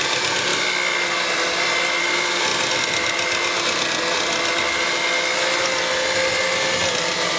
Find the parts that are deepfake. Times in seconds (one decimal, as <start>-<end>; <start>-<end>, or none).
0.0-0.5; 2.0-2.5; 6.9-7.4